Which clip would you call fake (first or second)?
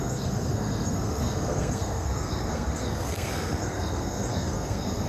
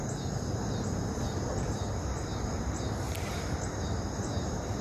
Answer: first